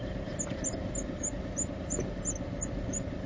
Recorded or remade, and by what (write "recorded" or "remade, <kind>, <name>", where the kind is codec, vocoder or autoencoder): recorded